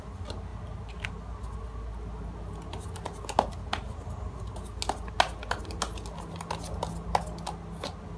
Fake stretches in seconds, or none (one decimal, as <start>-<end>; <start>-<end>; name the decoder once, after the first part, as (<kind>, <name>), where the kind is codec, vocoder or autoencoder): none